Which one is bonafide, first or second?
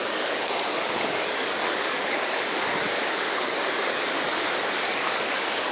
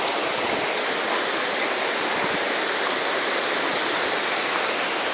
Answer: second